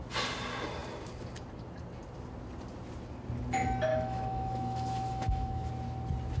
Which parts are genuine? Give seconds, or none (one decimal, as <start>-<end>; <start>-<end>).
0.0-3.9; 5.7-6.4